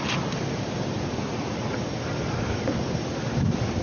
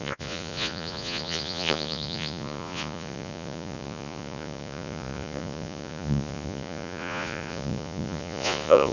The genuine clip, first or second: first